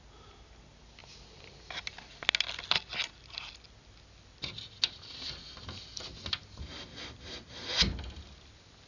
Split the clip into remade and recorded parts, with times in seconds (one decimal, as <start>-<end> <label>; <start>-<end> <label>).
0.0-1.0 recorded; 1.0-1.8 remade; 1.8-8.9 recorded